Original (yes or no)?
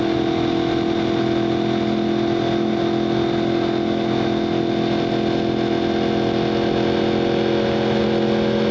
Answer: yes